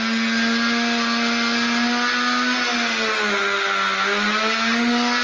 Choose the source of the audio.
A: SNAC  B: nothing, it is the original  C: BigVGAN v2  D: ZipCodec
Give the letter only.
B